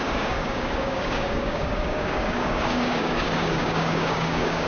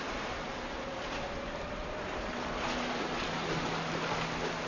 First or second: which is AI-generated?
first